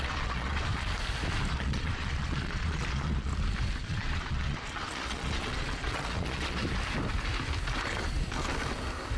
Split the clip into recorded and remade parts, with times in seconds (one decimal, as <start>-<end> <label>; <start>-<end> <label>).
0.0-0.7 remade; 0.7-1.5 recorded; 1.5-3.3 remade; 3.3-3.8 recorded; 3.8-6.6 remade; 6.6-9.2 recorded